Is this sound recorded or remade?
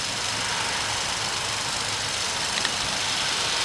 recorded